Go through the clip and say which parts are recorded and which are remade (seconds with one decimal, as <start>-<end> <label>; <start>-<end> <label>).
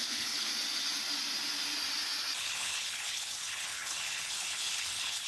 0.0-0.5 remade; 0.5-2.4 recorded; 2.4-5.3 remade